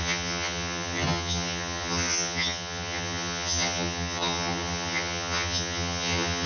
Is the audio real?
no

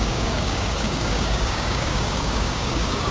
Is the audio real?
no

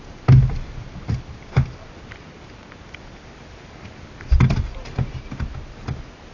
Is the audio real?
yes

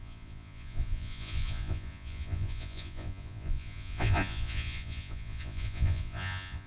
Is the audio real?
no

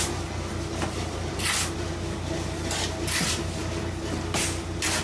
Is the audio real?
yes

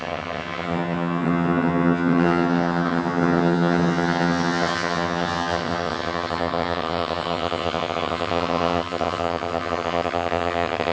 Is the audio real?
no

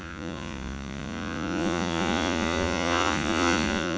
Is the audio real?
no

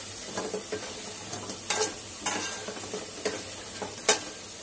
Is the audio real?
no